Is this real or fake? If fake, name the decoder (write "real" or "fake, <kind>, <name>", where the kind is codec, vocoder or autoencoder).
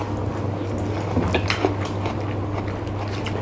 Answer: real